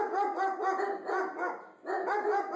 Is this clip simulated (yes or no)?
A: no